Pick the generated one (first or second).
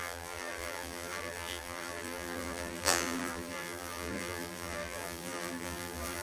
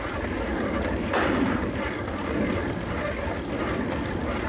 first